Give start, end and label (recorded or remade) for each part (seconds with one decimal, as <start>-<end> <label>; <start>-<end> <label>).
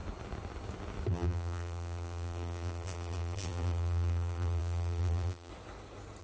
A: 0.0-1.1 recorded; 1.1-5.5 remade; 5.5-6.2 recorded